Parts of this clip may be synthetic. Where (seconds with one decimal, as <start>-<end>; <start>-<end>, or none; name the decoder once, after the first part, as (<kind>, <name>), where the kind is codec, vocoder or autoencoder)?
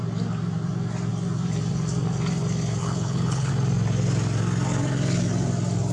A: 2.8-3.5 (codec, HILCodec)